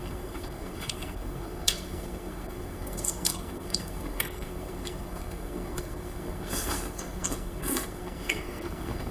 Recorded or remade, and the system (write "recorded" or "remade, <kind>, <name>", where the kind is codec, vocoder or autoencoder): remade, codec, SNAC